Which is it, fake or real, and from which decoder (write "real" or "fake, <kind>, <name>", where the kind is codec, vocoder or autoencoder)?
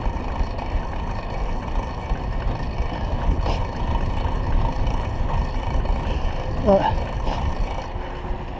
real